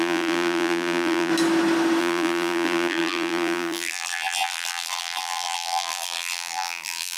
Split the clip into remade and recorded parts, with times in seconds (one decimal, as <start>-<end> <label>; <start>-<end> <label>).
0.0-1.3 remade; 1.3-2.0 recorded; 2.0-7.2 remade